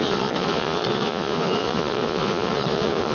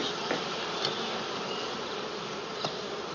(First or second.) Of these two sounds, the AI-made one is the first